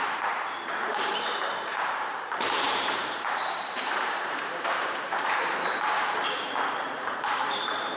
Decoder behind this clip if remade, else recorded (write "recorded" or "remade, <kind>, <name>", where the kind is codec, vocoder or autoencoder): remade, vocoder, BigVGAN v2